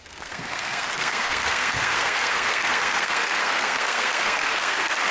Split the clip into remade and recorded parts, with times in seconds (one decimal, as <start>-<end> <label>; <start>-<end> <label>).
0.0-5.1 remade